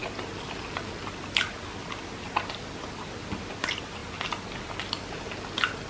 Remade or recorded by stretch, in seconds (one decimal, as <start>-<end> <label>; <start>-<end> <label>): 0.0-5.9 recorded